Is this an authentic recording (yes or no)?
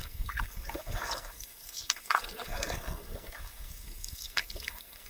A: no